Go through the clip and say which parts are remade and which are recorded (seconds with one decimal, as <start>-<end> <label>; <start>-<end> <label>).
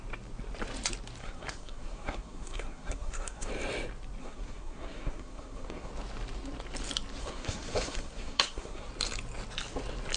0.0-1.2 recorded; 1.2-3.5 remade; 3.5-4.2 recorded; 4.2-5.9 remade; 5.9-7.2 recorded; 7.2-8.9 remade; 8.9-10.2 recorded